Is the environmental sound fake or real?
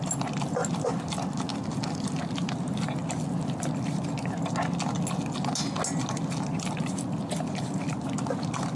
real